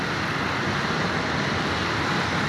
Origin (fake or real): real